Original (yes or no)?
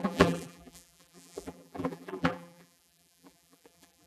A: no